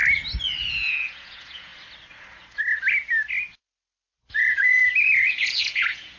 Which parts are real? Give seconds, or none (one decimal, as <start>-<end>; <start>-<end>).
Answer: 0.0-0.7; 1.7-4.3; 4.8-5.3